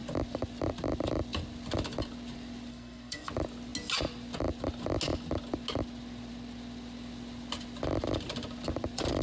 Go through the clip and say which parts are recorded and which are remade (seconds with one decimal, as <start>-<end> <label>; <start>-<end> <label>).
0.0-2.7 recorded; 2.7-3.3 remade; 3.3-9.2 recorded